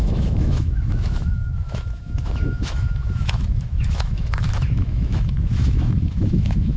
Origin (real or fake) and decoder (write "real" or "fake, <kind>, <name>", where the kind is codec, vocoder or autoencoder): fake, autoencoder, DAC-VAE